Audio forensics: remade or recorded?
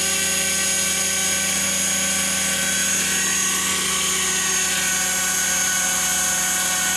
recorded